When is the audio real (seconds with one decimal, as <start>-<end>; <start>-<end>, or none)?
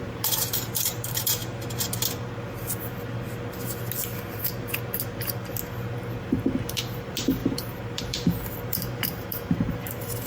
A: 1.4-6.2